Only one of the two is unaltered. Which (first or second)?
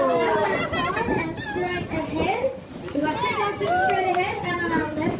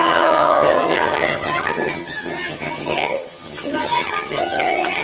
first